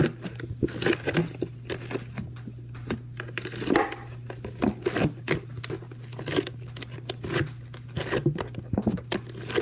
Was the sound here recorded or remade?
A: recorded